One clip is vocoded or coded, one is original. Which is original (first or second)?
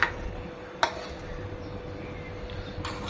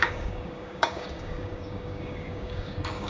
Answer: first